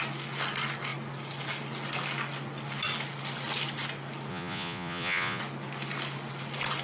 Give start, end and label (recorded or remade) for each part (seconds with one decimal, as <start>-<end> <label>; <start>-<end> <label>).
0.0-4.3 recorded; 4.3-5.4 remade; 5.4-6.8 recorded